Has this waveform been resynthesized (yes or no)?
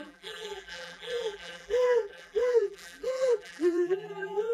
yes